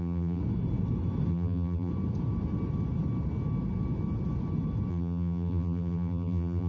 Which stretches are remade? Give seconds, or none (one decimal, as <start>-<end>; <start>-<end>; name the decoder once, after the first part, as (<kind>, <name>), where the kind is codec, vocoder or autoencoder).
0.0-0.4 (vocoder, BigVGAN v2); 1.3-1.9; 4.9-6.7